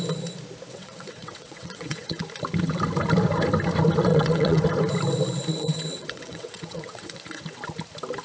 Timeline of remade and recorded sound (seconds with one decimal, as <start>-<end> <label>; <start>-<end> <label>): 0.0-0.7 recorded; 0.7-2.2 remade; 2.2-4.1 recorded; 4.1-4.6 remade; 4.6-5.5 recorded; 5.5-7.4 remade; 7.4-8.2 recorded